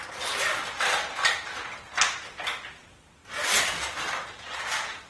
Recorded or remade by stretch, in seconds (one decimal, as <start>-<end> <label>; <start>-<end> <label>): 0.0-5.1 recorded